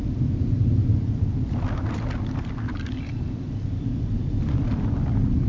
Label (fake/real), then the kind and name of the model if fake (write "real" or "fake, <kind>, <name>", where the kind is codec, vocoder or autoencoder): real